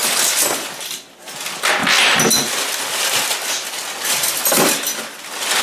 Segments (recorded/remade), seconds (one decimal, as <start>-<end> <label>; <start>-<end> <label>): 0.0-5.6 recorded